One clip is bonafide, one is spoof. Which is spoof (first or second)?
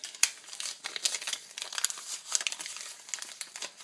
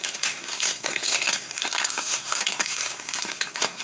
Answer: second